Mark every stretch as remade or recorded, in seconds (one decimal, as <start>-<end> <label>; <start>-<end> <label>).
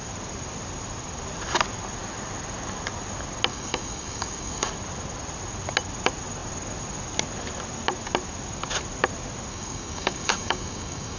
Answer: 0.0-3.5 recorded; 3.5-4.7 remade; 4.7-9.5 recorded; 9.5-11.2 remade